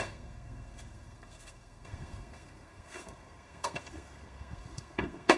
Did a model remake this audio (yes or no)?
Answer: yes